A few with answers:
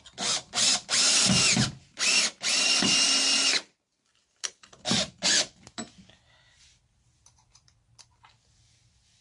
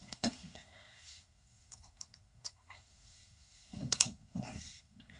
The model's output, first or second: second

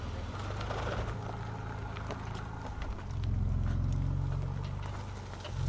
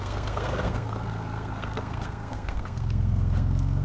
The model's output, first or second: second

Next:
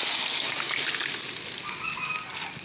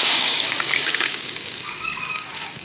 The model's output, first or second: second